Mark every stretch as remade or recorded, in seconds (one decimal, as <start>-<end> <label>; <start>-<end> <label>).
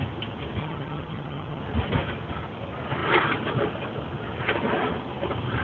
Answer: 0.0-0.6 recorded; 0.6-1.6 remade; 1.6-5.6 recorded